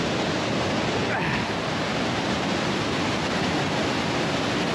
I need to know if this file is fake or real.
real